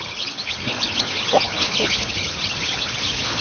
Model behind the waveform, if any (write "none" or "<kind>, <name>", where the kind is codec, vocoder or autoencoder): codec, HILCodec